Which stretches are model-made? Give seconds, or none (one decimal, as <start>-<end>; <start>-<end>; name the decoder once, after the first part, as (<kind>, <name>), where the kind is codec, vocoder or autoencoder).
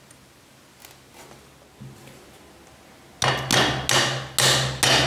none